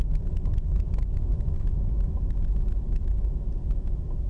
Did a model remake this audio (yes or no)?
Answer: no